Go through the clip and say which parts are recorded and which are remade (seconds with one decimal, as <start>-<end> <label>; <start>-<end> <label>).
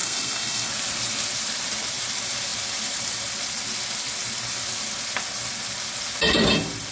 0.0-0.7 remade; 0.7-6.9 recorded